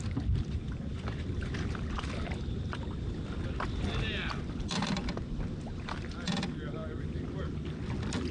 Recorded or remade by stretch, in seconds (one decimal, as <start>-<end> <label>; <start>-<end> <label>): 0.0-0.9 recorded; 0.9-3.2 remade; 3.2-4.2 recorded; 4.2-6.0 remade; 6.0-8.3 recorded